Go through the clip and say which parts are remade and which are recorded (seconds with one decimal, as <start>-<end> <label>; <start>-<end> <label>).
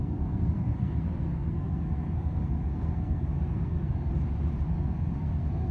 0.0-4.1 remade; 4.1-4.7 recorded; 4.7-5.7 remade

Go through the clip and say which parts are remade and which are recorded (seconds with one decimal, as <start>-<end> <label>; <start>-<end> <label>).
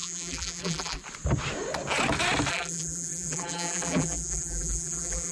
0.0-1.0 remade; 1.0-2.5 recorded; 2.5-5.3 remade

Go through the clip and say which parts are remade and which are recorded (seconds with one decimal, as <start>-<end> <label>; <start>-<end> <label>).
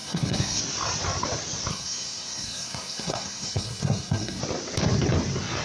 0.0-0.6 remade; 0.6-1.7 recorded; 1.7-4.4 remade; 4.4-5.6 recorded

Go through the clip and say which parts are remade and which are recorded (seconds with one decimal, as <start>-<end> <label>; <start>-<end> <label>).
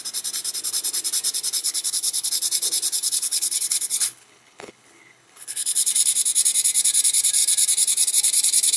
0.0-1.6 recorded; 1.6-2.3 remade; 2.3-3.0 recorded; 3.0-5.9 remade; 5.9-8.8 recorded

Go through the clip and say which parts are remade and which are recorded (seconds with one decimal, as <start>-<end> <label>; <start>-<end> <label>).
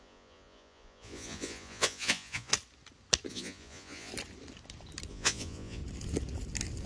0.0-2.5 remade; 2.5-3.3 recorded; 3.3-4.1 remade; 4.1-5.1 recorded; 5.1-5.8 remade; 5.8-6.9 recorded